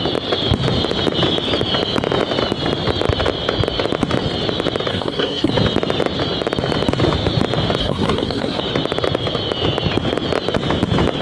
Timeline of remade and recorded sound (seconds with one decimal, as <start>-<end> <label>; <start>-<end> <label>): 0.0-4.9 recorded; 4.9-5.5 remade; 5.5-7.8 recorded; 7.8-8.6 remade; 8.6-11.2 recorded